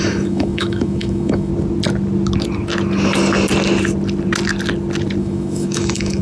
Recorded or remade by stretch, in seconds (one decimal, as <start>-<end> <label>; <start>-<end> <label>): 0.0-1.5 remade; 1.5-5.2 recorded; 5.2-6.2 remade